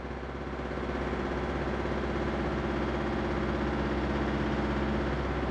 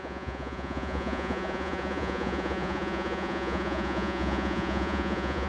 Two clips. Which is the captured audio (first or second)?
first